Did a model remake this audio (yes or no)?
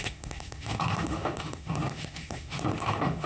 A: yes